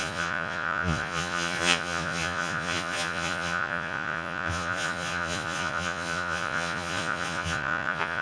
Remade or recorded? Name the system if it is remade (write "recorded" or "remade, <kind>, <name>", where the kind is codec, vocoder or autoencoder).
remade, vocoder, Vocos